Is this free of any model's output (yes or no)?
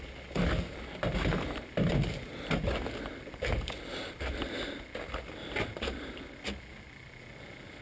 yes